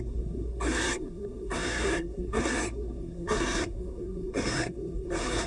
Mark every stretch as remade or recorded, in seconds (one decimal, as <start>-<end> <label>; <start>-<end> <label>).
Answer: 0.0-5.5 remade